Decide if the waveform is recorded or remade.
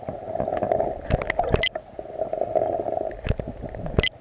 recorded